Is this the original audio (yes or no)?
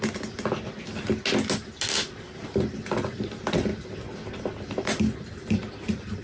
yes